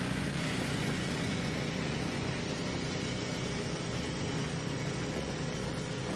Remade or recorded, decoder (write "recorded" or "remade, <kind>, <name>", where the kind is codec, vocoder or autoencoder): remade, vocoder, Vocos